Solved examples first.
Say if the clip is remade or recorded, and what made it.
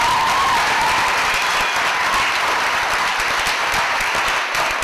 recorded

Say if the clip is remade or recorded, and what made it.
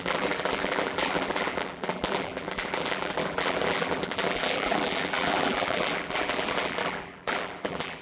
remade, vocoder, BigVGAN v2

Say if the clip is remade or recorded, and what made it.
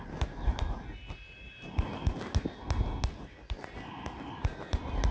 recorded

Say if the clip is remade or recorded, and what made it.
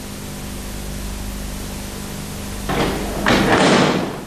recorded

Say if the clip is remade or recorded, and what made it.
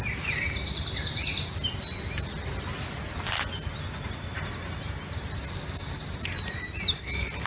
recorded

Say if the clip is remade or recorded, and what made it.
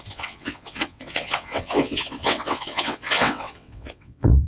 remade, vocoder, WaveNeXt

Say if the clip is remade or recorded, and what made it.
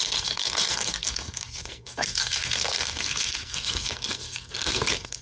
remade, codec, SNAC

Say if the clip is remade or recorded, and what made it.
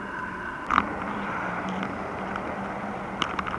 recorded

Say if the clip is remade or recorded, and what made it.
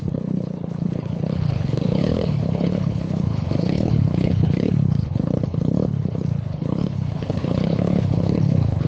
remade, codec, HILCodec